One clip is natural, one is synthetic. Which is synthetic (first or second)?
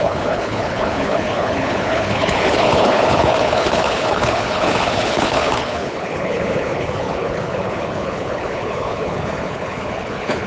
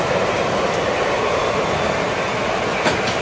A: first